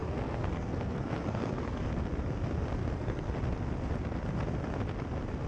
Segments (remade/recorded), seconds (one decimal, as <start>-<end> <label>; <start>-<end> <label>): 0.0-1.9 remade; 1.9-2.8 recorded; 2.8-3.3 remade; 3.3-5.5 recorded